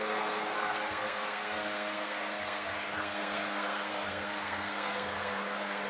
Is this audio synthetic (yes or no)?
yes